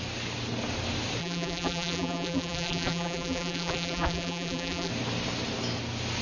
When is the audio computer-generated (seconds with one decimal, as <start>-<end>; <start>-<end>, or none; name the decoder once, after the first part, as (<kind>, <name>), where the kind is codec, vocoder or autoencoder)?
1.2-4.9 (vocoder, BigVGAN v2)